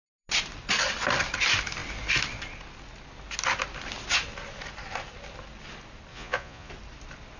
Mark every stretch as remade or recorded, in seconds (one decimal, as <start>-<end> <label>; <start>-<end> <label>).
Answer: 0.0-6.1 recorded; 6.1-6.7 remade; 6.7-7.4 recorded